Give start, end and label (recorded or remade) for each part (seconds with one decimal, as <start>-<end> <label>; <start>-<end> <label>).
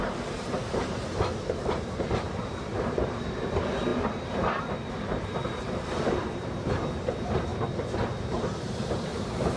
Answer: 0.0-7.5 remade; 7.5-8.2 recorded; 8.2-9.6 remade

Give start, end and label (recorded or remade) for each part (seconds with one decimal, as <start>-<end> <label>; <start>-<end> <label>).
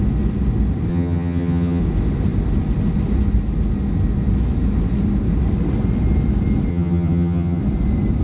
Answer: 0.0-0.9 recorded; 0.9-1.8 remade; 1.8-6.7 recorded; 6.7-7.6 remade; 7.6-8.2 recorded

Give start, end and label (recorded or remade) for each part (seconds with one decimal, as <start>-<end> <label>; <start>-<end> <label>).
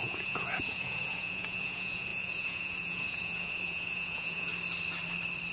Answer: 0.0-4.5 remade; 4.5-5.5 recorded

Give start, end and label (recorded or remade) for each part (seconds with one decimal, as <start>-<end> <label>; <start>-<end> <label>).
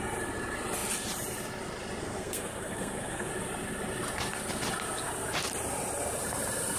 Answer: 0.0-2.0 recorded; 2.0-3.3 remade; 3.3-6.8 recorded